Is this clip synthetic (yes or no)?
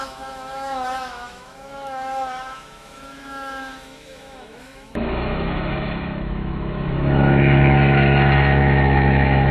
yes